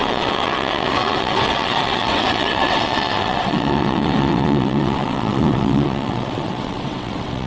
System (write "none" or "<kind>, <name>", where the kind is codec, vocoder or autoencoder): vocoder, WaveNeXt